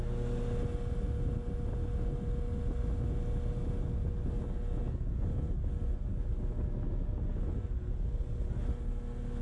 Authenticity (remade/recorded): recorded